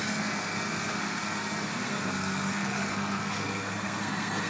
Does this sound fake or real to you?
fake